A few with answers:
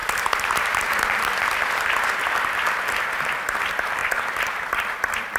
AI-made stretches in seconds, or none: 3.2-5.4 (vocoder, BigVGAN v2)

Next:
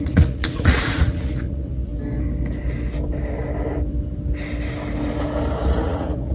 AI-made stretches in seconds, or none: 0.0-1.9 (vocoder, Vocos); 5.7-6.3

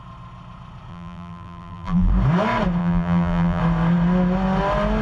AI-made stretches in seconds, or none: 0.9-2.1 (vocoder, BigVGAN v2); 2.8-3.6

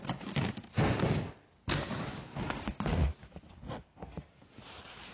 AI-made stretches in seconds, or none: 0.6-1.6 (vocoder, BigVGAN v2)

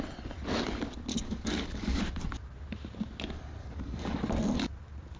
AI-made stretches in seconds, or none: 1.1-2.0 (codec, DAC); 3.6-4.2

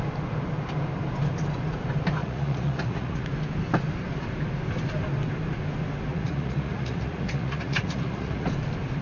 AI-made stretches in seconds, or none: 2.2-3.2 (vocoder, Vocos); 6.1-8.5